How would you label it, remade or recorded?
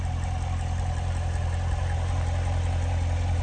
recorded